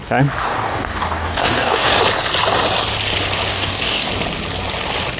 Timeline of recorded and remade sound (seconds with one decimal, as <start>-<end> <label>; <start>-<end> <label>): 0.0-0.4 recorded; 0.4-2.0 remade; 2.0-3.5 recorded; 3.5-4.1 remade; 4.1-5.2 recorded